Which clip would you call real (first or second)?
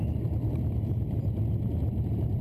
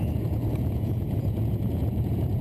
first